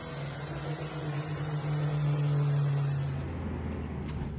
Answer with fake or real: real